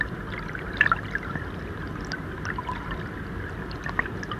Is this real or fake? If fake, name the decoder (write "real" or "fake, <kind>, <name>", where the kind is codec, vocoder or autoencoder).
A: real